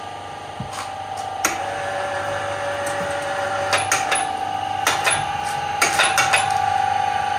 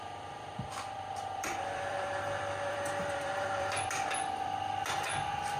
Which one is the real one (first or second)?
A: first